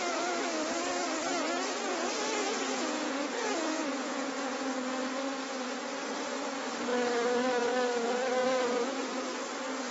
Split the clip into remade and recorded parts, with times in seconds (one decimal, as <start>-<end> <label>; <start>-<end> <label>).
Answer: 0.0-2.4 recorded; 2.4-4.3 remade; 4.3-8.4 recorded; 8.4-9.2 remade; 9.2-9.9 recorded